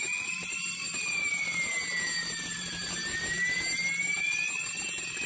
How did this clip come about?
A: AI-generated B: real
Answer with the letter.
B